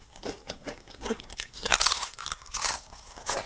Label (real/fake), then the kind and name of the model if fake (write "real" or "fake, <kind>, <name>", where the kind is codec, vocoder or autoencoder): fake, codec, SNAC